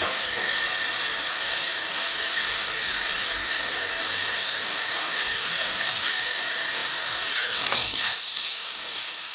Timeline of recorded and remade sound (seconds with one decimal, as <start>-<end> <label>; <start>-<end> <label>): 0.0-0.6 remade; 0.6-1.3 recorded; 1.3-9.3 remade